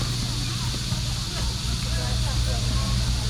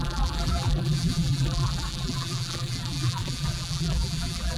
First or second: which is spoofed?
second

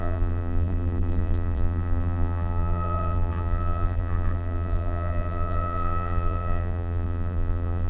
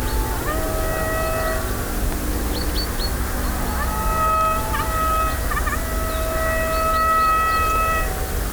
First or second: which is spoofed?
first